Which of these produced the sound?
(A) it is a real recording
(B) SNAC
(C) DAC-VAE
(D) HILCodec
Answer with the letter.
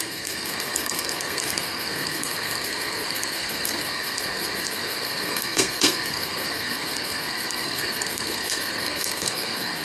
B